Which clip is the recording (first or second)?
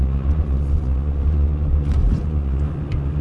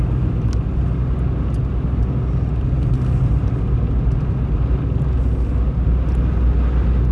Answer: second